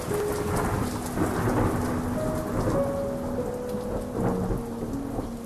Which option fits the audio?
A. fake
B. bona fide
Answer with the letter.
B